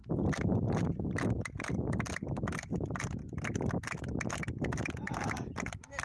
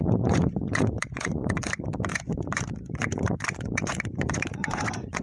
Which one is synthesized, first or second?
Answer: second